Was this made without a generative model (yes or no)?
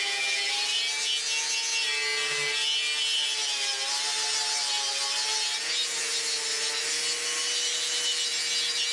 yes